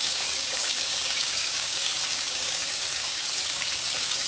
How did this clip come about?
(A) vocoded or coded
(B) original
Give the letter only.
A